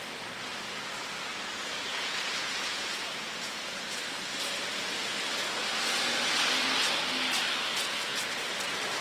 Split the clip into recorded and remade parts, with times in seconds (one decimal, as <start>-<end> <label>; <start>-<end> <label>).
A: 0.0-1.3 recorded; 1.3-3.8 remade; 3.8-7.7 recorded; 7.7-8.4 remade; 8.4-9.0 recorded